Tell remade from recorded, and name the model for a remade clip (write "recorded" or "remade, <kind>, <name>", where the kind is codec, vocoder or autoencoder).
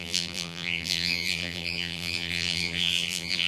remade, vocoder, BigVGAN v2